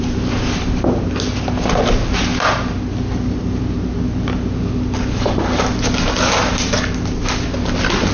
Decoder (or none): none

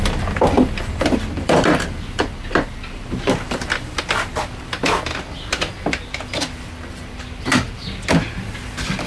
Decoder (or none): vocoder, BigVGAN v2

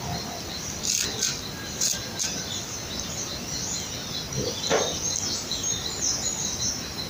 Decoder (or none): none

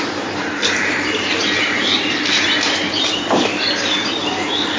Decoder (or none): vocoder, BigVGAN v2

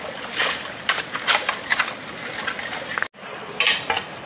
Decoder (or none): none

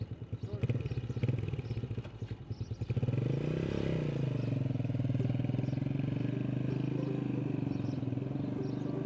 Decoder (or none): none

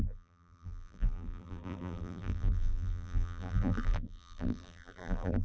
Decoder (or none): vocoder, BigVGAN v2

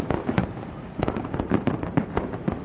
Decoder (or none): none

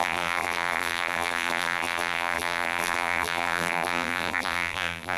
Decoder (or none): vocoder, BigVGAN v2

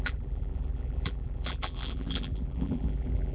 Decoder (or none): vocoder, BigVGAN v2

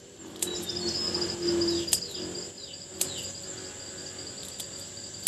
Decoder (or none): none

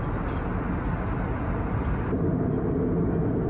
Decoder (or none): none